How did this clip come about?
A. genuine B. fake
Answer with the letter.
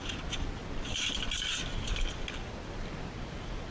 A